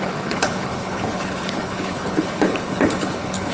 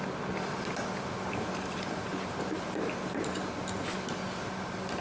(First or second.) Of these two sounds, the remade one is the first